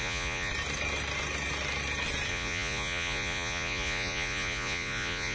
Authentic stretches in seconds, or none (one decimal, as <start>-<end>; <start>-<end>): 0.5-2.3